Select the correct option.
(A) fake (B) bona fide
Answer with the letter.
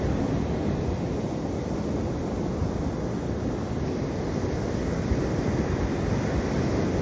B